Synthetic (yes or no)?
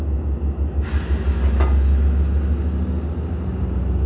no